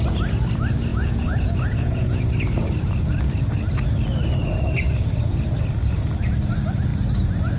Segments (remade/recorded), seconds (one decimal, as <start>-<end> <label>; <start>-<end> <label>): 0.0-0.9 recorded; 0.9-2.2 remade; 2.2-7.6 recorded